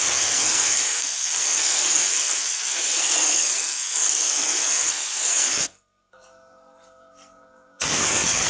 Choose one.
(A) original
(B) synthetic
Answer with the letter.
B